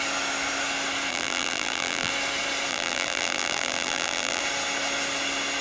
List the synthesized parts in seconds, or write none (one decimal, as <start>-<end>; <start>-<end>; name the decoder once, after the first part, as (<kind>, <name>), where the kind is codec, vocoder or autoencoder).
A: 1.1-2.1 (vocoder, BigVGAN v2); 2.7-4.4